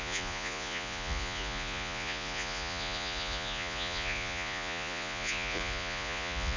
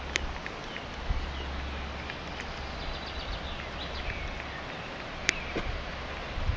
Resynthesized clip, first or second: first